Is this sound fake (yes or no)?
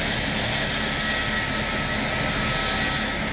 no